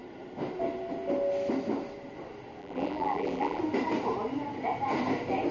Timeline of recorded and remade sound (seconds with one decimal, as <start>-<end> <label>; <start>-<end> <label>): 0.0-2.6 recorded; 2.6-3.6 remade; 3.6-5.5 recorded